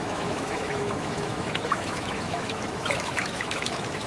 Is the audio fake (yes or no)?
yes